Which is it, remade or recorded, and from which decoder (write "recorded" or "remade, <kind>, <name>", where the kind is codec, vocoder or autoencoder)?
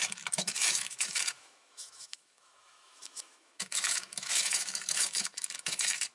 remade, autoencoder, DAC-VAE